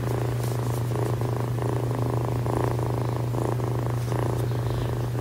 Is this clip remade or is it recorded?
recorded